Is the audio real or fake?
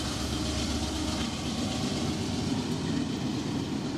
real